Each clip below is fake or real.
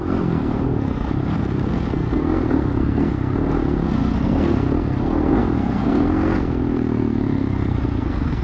fake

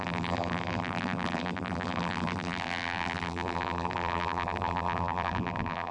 fake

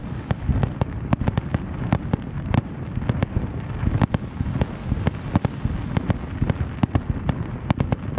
real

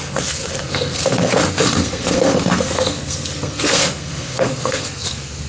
fake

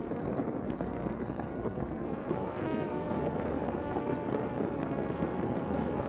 fake